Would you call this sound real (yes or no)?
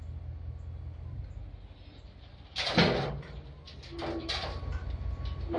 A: yes